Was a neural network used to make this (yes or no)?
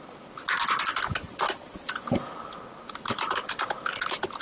no